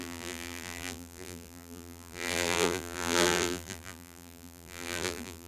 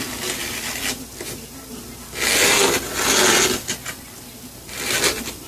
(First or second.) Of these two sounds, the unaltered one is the second